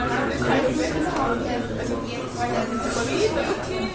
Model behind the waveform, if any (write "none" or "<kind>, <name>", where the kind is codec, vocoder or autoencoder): none